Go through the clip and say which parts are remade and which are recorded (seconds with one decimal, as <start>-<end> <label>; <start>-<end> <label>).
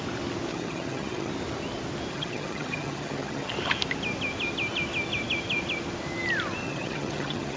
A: 0.0-0.5 recorded; 0.5-1.3 remade; 1.3-2.1 recorded; 2.1-3.5 remade; 3.5-6.6 recorded; 6.6-7.6 remade